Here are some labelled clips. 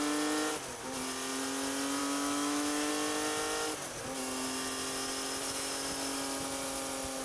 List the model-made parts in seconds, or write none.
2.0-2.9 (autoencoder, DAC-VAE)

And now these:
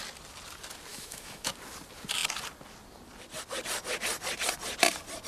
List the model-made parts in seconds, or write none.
0.9-1.5 (autoencoder, DAC-VAE)

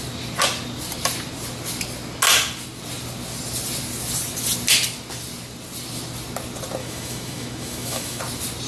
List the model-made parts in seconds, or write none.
6.8-8.2 (autoencoder, DAC-VAE)

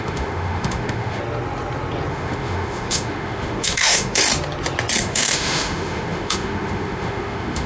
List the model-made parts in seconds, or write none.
0.0-1.2 (autoencoder, DAC-VAE); 2.1-4.2; 5.0-7.7

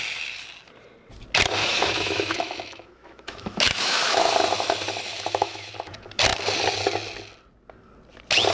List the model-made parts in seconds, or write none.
1.6-4.3 (autoencoder, DAC-VAE); 5.1-5.7

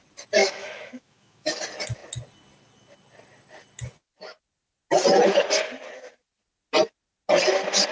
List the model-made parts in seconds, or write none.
0.4-1.6 (autoencoder, DAC-VAE)

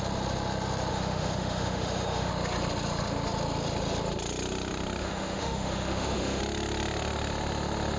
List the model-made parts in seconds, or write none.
0.9-2.3 (autoencoder, DAC-VAE); 5.0-6.4